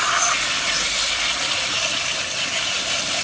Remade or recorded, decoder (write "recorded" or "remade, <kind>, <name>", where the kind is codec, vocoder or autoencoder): recorded